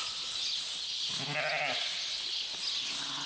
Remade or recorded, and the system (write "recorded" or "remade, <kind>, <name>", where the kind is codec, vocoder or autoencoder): recorded